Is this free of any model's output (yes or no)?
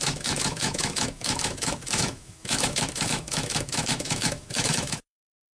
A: no